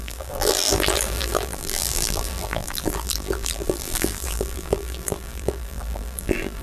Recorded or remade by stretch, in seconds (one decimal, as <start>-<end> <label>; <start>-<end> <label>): 0.0-6.6 remade